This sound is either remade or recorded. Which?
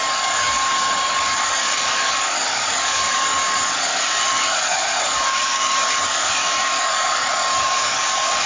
remade